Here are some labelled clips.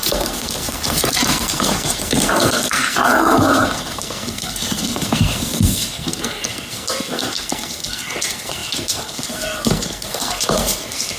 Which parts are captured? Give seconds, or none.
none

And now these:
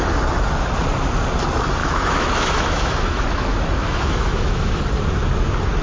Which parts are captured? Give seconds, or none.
0.0-1.8; 4.8-5.8

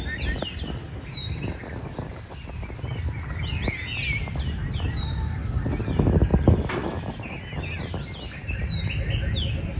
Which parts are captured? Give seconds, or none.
0.0-9.8

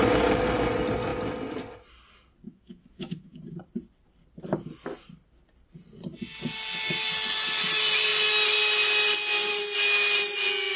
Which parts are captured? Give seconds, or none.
0.0-2.5; 3.4-10.8

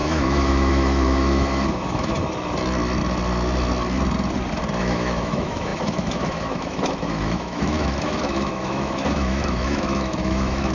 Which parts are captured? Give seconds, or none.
2.2-4.8

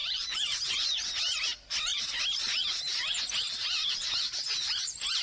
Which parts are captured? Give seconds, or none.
0.7-1.9

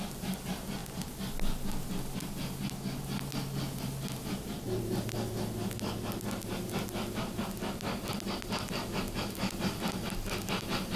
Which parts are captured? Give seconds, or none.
0.0-11.0

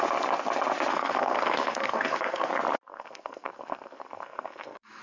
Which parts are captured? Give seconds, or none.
0.0-0.9; 2.5-2.9